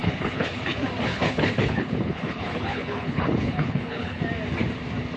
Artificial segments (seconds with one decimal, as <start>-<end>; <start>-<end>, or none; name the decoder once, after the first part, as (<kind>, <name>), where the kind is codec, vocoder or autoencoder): 0.0-0.6 (codec, HILCodec); 1.1-4.2